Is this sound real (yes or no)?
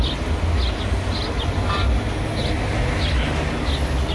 yes